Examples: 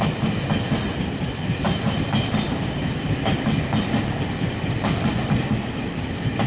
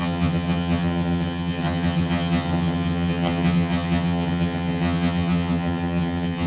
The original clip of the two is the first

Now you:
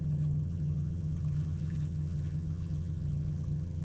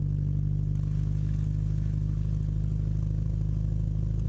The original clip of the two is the second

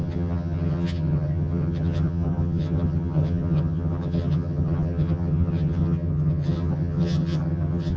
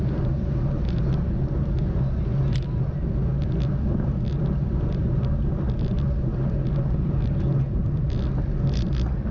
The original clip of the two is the second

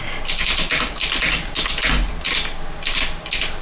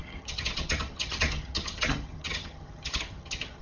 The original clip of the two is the first